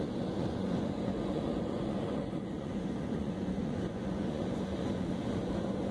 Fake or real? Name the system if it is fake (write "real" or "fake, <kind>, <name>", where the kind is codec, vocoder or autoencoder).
fake, vocoder, Vocos